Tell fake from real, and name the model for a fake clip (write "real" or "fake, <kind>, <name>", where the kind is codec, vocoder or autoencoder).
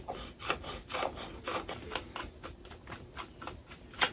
real